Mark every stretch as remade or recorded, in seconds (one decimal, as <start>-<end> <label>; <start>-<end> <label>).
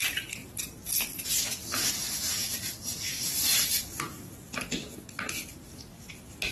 0.0-6.5 recorded